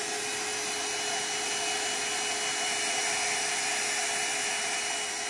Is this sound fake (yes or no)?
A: no